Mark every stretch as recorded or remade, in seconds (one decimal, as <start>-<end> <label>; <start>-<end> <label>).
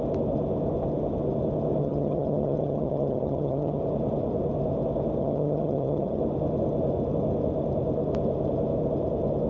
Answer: 0.0-1.8 recorded; 1.8-3.8 remade; 3.8-5.2 recorded; 5.2-6.2 remade; 6.2-9.5 recorded